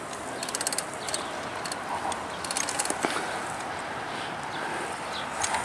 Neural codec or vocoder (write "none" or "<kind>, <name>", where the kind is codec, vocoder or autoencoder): none